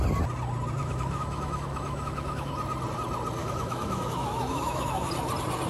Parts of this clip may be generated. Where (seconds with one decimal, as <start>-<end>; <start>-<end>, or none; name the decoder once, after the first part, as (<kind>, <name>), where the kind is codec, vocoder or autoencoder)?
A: 0.8-2.5 (autoencoder, DAC-VAE); 3.4-5.1